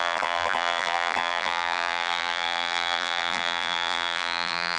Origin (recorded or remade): remade